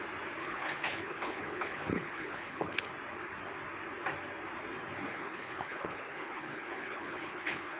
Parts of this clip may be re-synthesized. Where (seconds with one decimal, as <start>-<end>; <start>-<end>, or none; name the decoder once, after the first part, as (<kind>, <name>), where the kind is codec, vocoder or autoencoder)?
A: 0.4-2.9 (codec, HILCodec); 5.1-7.8